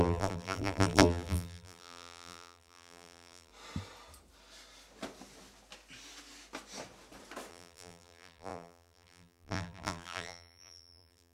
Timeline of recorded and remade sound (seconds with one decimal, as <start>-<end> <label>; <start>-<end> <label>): 0.0-3.5 remade; 3.5-7.5 recorded; 7.5-11.3 remade